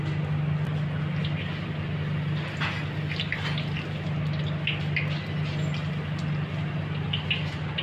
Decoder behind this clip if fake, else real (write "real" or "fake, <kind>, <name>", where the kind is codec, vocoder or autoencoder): real